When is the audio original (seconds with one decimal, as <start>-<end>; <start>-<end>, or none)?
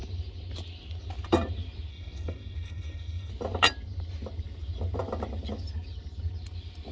0.0-1.9; 3.3-6.9